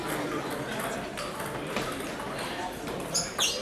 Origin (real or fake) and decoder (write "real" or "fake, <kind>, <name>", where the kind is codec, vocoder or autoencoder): real